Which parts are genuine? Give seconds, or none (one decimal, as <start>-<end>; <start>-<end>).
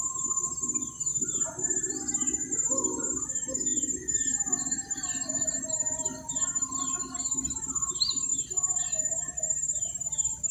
0.0-1.1; 1.6-3.7; 7.9-10.5